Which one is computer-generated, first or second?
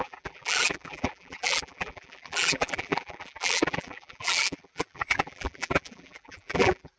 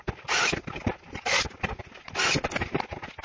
first